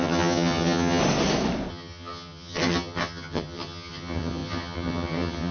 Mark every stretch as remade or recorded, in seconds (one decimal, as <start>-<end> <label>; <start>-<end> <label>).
0.0-1.0 remade; 1.0-1.7 recorded; 1.7-5.5 remade

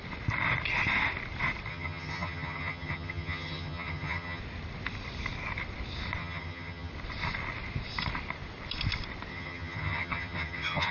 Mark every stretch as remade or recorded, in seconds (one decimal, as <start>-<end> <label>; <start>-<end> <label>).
0.0-1.7 recorded; 1.7-4.4 remade; 4.4-6.2 recorded; 6.2-6.9 remade; 6.9-9.3 recorded; 9.3-10.9 remade

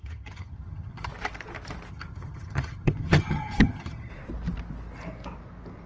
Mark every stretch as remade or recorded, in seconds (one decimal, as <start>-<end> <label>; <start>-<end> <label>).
0.0-1.1 remade; 1.1-1.9 recorded; 1.9-4.1 remade; 4.1-5.9 recorded

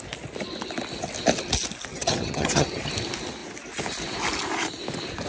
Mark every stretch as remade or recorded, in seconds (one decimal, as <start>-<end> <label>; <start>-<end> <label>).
0.0-1.9 recorded; 1.9-2.9 remade; 2.9-5.3 recorded

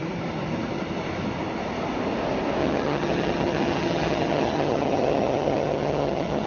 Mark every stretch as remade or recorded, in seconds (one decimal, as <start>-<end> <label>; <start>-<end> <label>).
0.0-2.6 recorded; 2.6-6.5 remade